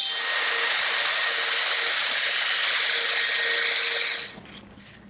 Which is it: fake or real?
real